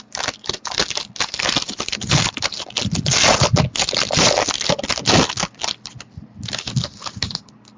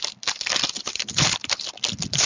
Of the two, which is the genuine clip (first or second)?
first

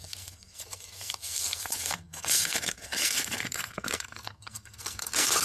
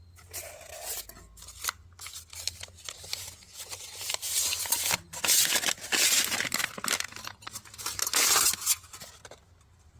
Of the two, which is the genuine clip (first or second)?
second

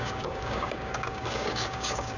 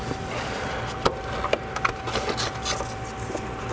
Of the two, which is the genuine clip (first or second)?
second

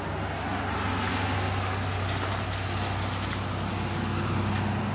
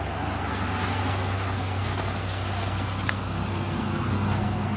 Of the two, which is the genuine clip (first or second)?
first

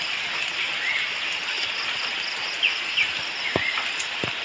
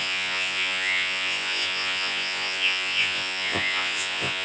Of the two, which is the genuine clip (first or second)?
first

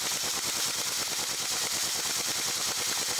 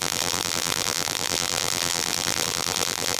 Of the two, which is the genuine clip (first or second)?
first